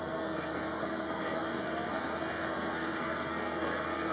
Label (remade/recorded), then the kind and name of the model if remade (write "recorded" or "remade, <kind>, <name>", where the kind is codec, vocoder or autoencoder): remade, codec, SNAC